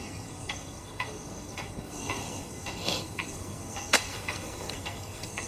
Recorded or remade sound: remade